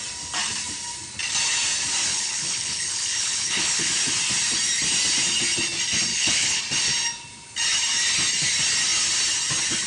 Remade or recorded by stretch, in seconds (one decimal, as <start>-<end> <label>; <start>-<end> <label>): 0.0-2.1 recorded; 2.1-3.9 remade; 3.9-6.1 recorded; 6.1-6.6 remade; 6.6-9.9 recorded